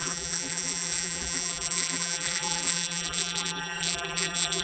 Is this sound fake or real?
fake